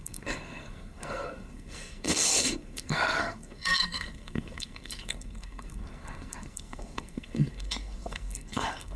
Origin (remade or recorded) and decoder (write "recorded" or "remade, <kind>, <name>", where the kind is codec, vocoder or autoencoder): remade, codec, SNAC